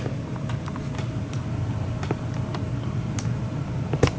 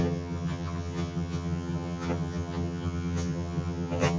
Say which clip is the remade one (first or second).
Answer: second